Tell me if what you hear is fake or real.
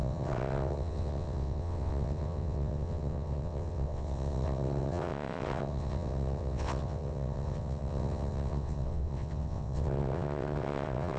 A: fake